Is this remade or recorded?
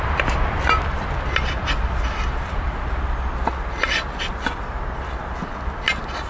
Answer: recorded